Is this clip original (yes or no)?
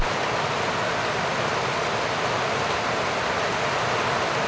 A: yes